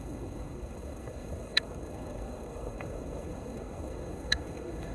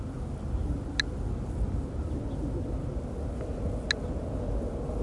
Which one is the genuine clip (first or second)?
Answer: second